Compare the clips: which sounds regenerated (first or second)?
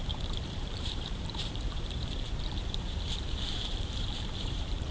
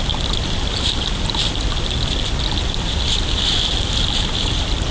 first